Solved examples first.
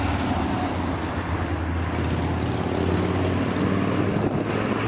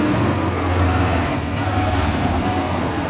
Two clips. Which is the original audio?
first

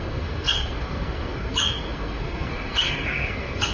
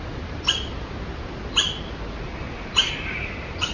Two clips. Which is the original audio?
second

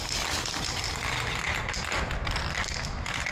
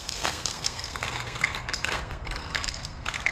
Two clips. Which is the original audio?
first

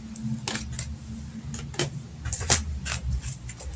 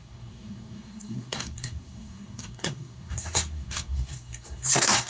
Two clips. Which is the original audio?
first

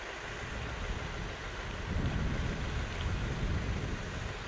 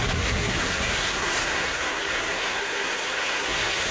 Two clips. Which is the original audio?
first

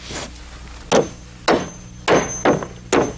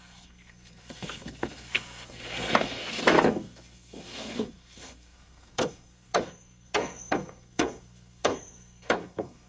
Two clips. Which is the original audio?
first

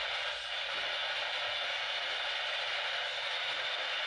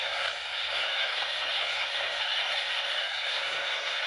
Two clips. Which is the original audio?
first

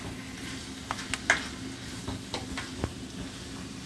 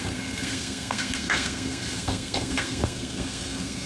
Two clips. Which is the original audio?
first